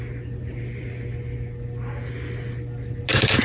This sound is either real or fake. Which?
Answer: real